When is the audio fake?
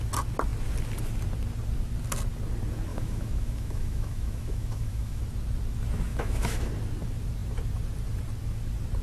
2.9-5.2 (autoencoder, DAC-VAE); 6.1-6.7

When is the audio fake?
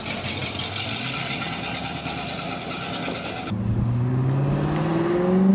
0.4-2.6 (vocoder, BigVGAN v2)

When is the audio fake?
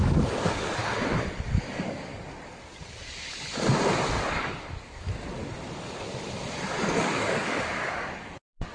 0.0-0.8 (codec, DAC); 1.6-2.1; 4.1-5.4; 7.0-8.7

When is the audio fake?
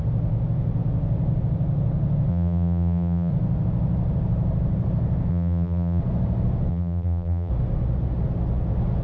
2.3-3.3 (vocoder, BigVGAN v2); 5.3-6.0; 6.7-7.5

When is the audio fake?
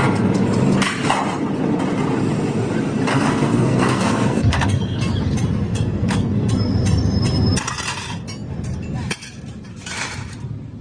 3.1-5.0 (codec, SNAC); 5.7-6.5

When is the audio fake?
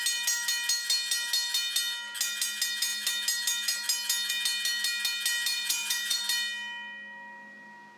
5.5-6.2 (vocoder, Vocos)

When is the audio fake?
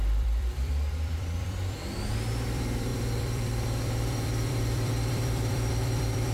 0.0-6.3 (vocoder, BigVGAN v2)